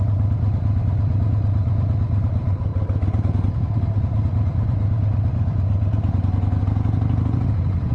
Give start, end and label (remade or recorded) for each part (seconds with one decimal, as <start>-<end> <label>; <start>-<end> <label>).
0.0-7.9 remade